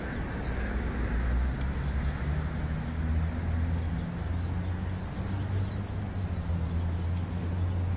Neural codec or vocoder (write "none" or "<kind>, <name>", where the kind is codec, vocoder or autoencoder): none